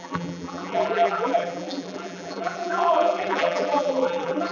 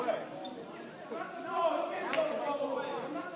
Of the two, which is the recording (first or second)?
second